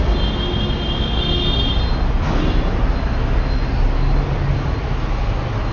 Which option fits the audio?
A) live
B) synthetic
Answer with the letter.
A